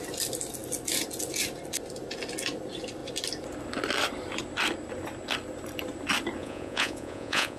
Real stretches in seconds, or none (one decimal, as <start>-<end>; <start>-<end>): 0.0-6.4